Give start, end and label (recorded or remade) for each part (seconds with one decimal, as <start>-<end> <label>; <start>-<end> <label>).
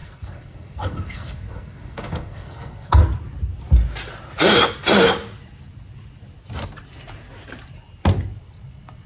0.0-3.0 remade; 3.0-9.1 recorded